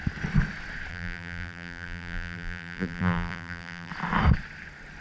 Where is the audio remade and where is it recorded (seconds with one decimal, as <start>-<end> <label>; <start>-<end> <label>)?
0.0-0.9 recorded; 0.9-3.9 remade; 3.9-5.0 recorded